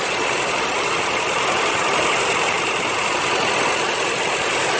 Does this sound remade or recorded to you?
recorded